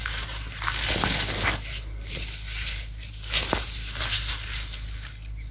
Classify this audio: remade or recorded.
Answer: recorded